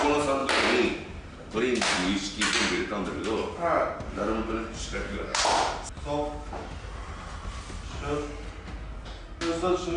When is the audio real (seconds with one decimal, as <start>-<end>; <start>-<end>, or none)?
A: 0.0-10.0